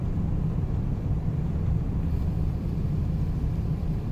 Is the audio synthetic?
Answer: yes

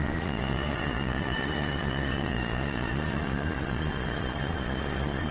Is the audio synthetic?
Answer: yes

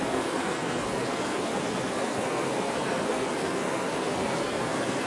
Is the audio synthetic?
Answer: yes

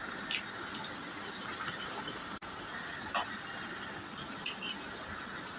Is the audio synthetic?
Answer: no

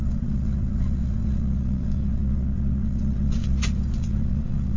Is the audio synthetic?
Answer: yes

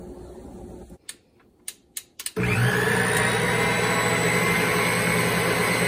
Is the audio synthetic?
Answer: no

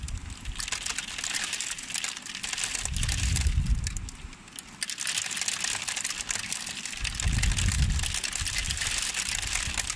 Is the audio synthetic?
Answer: no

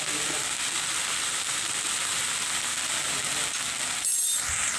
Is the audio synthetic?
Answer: no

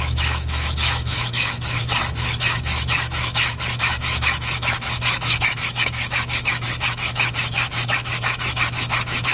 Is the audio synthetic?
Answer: yes